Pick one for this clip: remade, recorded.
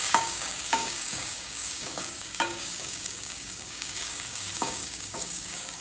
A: remade